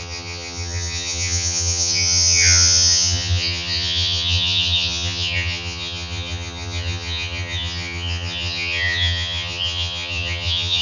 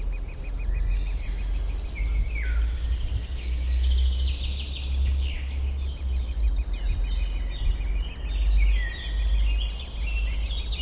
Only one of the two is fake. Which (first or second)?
first